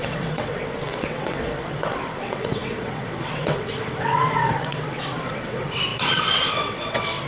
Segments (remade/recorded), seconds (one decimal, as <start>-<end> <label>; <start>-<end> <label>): 0.0-7.3 remade